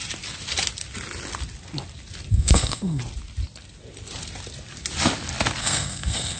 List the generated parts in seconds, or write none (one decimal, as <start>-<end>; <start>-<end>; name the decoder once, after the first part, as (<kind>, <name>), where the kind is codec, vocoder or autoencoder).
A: 2.3-3.0 (codec, SNAC); 5.6-6.4